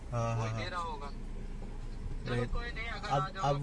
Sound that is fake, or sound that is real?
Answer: real